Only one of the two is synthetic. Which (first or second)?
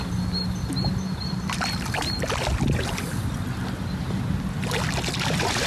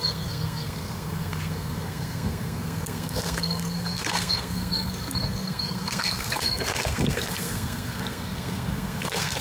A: second